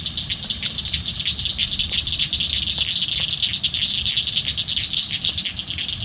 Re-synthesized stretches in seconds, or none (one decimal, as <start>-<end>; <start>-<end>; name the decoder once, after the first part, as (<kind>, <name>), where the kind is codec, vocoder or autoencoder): none